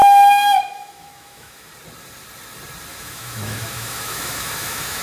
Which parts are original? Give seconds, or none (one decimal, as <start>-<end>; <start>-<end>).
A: 1.7-2.9